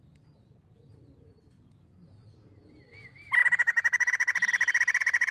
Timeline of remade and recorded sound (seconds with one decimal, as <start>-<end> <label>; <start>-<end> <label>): 0.0-5.3 recorded